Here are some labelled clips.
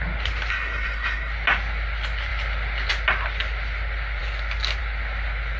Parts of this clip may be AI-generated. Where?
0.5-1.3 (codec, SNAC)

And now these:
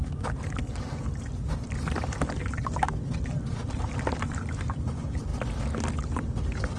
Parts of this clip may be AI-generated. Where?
1.5-5.3 (vocoder, BigVGAN v2); 6.1-6.8

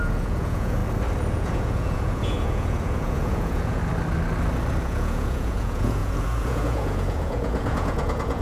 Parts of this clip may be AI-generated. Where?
0.0-0.8 (vocoder, Vocos); 1.3-3.8; 4.8-8.4

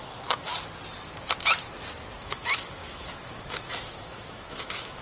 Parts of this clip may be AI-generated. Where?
0.0-0.5 (autoencoder, DAC-VAE); 2.2-5.0